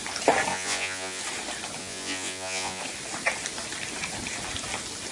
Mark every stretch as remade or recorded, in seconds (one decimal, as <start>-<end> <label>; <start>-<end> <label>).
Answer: 0.0-0.5 recorded; 0.5-1.2 remade; 1.2-1.8 recorded; 1.8-2.8 remade; 2.8-5.1 recorded